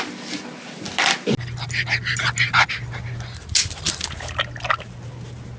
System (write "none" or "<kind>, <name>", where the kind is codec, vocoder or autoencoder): none